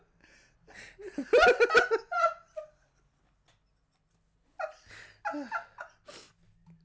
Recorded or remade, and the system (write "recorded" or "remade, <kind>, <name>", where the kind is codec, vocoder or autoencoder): recorded